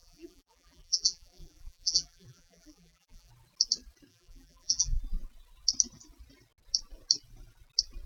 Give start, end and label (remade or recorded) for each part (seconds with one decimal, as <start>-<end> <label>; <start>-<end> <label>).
0.0-3.3 remade; 3.3-4.1 recorded; 4.1-5.0 remade; 5.0-8.1 recorded